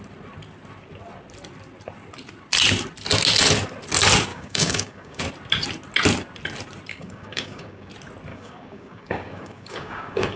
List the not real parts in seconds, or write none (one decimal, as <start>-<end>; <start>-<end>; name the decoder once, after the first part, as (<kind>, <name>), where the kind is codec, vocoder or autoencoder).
4.3-5.2 (codec, DAC); 6.9-7.9; 8.3-10.4